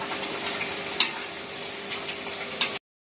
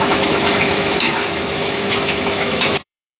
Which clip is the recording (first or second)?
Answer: first